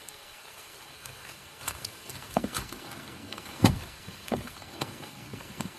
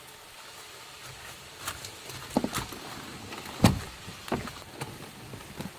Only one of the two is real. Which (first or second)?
second